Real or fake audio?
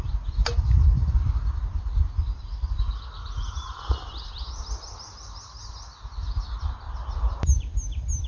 real